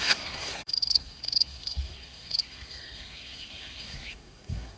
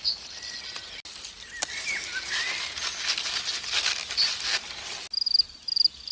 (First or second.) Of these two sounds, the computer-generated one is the first